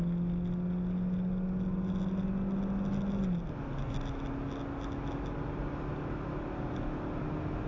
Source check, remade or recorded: recorded